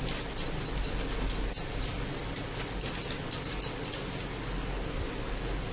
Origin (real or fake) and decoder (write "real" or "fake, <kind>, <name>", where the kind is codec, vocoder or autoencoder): real